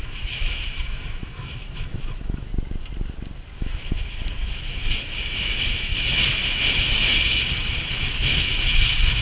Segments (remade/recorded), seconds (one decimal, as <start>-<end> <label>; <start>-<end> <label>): 0.0-2.5 remade; 2.5-3.6 recorded; 3.6-9.2 remade

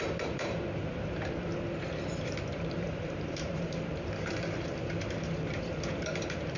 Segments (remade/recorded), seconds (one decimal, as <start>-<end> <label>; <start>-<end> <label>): 0.0-1.5 remade; 1.5-2.5 recorded; 2.5-6.6 remade

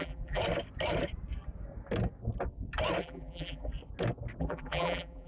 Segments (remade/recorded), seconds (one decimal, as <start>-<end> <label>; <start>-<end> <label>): 0.0-0.4 remade; 0.4-3.0 recorded; 3.0-3.7 remade; 3.7-4.4 recorded; 4.4-5.3 remade

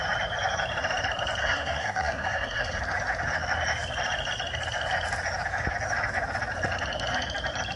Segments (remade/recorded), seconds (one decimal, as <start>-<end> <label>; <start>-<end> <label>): 0.0-1.4 recorded; 1.4-2.8 remade; 2.8-7.8 recorded

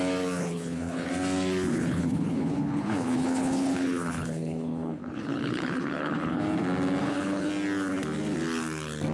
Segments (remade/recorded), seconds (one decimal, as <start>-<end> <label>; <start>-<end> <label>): 0.0-0.4 recorded; 0.4-1.1 remade; 1.1-1.7 recorded; 1.7-6.4 remade; 6.4-7.0 recorded; 7.0-7.5 remade; 7.5-9.1 recorded